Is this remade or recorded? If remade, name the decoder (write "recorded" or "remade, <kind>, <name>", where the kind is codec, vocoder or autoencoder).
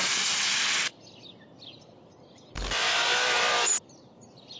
recorded